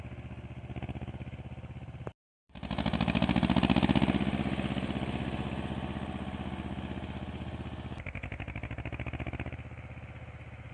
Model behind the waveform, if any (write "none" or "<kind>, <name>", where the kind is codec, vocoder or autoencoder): none